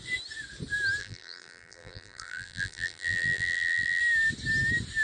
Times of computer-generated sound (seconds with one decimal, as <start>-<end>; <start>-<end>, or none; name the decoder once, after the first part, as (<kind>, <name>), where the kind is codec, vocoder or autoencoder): 1.0-4.0 (vocoder, BigVGAN v2)